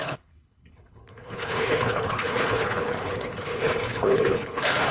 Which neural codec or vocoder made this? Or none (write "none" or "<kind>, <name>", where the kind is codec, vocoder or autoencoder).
codec, HILCodec